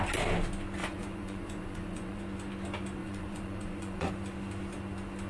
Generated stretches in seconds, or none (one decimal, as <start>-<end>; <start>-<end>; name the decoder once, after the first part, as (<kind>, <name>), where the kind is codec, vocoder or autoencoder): 0.8-2.2 (vocoder, Vocos); 3.0-4.1